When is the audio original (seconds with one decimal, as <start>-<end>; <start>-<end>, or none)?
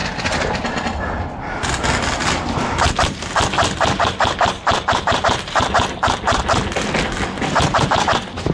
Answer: 0.0-8.5